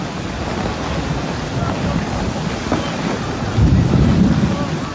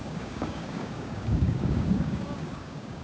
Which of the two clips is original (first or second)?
first